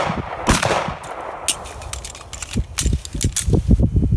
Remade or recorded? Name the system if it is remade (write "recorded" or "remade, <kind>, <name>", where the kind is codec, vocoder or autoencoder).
recorded